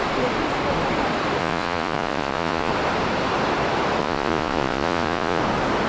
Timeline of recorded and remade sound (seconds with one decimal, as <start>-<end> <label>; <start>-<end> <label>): 0.0-1.4 recorded; 1.4-2.7 remade; 2.7-4.0 recorded; 4.0-5.4 remade; 5.4-5.9 recorded